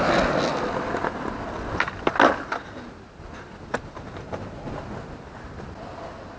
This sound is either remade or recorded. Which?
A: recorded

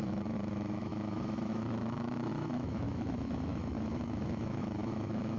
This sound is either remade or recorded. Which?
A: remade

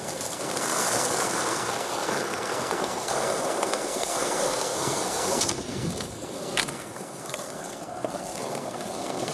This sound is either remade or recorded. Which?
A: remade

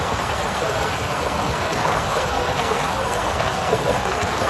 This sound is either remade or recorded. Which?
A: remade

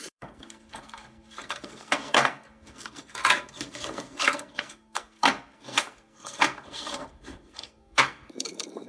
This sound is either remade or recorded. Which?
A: remade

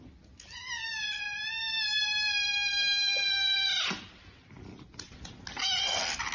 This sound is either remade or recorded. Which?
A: recorded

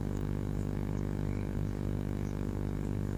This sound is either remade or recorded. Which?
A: remade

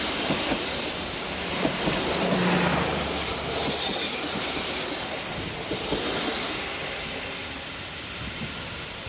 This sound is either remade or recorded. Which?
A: recorded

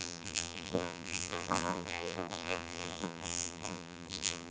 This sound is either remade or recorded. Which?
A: remade